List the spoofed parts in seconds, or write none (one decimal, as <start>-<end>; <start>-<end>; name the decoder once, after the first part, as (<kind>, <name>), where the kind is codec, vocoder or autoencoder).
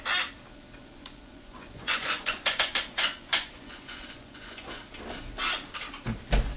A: 0.8-4.8 (vocoder, Vocos)